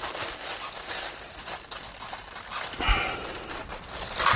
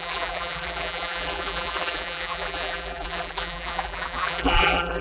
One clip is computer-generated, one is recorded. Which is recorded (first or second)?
first